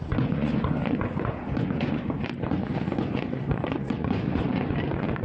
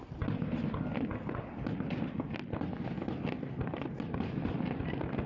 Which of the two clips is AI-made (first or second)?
first